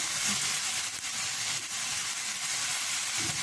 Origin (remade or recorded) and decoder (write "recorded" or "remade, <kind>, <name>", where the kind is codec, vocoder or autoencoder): recorded